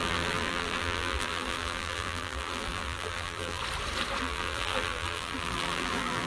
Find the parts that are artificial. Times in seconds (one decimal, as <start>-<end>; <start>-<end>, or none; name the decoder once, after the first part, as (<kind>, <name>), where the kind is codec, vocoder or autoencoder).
0.0-3.6 (vocoder, BigVGAN v2); 4.2-6.3